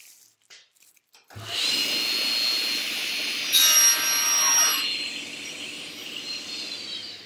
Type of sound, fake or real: real